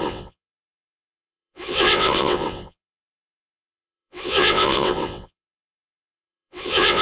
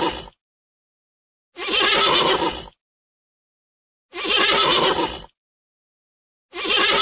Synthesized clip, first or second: first